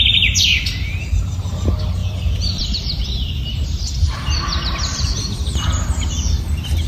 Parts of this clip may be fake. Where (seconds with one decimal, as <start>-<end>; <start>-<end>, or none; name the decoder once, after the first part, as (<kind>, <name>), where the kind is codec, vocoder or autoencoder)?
2.0-6.1 (vocoder, BigVGAN v2)

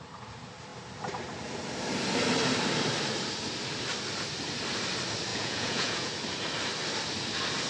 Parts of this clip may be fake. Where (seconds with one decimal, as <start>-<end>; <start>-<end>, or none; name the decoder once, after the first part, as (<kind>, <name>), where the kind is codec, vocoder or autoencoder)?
5.3-6.1 (vocoder, Vocos)

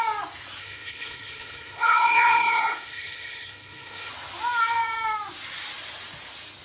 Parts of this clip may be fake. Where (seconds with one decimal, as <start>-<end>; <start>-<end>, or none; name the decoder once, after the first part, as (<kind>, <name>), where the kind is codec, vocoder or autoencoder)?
0.6-4.1 (codec, HILCodec)

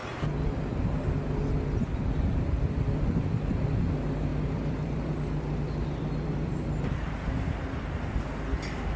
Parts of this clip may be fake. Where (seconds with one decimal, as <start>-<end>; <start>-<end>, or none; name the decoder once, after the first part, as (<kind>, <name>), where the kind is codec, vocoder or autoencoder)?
4.3-8.1 (vocoder, BigVGAN v2)

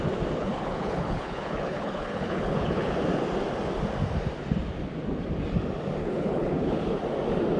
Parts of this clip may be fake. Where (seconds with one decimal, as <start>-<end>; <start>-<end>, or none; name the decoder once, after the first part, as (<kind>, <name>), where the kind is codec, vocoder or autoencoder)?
0.4-2.9 (codec, HILCodec); 6.0-7.0

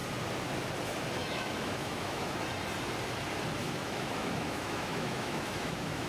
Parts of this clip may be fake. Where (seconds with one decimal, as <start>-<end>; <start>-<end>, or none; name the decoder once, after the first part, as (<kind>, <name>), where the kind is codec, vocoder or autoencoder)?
1.2-2.4 (autoencoder, DAC-VAE); 3.6-6.1

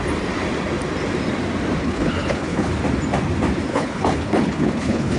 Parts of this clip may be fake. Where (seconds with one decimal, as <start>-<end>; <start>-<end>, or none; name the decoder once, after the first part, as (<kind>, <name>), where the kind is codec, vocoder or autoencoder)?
1.8-2.7 (codec, HILCodec); 3.7-5.2